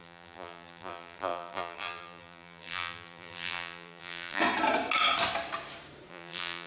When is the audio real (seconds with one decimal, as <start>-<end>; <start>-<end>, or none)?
4.4-6.1